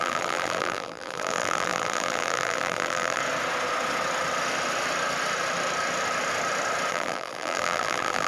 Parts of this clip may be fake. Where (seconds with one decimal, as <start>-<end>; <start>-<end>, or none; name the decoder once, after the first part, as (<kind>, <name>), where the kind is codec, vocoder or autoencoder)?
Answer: 0.0-3.2 (vocoder, BigVGAN v2); 6.9-8.3